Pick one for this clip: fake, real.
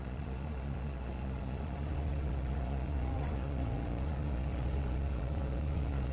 fake